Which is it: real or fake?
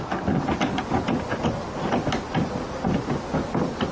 real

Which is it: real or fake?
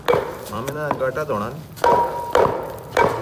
fake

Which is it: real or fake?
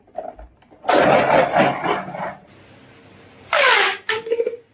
real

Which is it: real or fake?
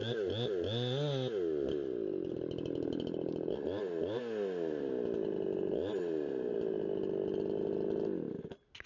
real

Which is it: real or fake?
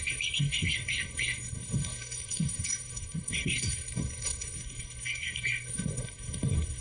fake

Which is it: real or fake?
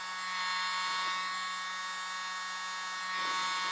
real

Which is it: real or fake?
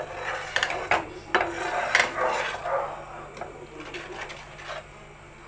real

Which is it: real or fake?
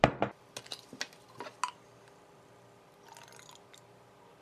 real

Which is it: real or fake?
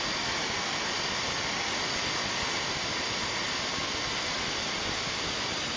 real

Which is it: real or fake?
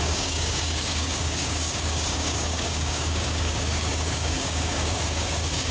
fake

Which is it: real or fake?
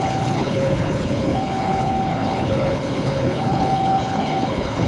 fake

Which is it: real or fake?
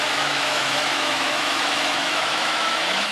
fake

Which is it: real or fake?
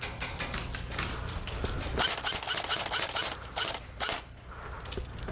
real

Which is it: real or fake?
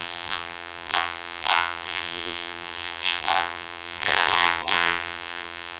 fake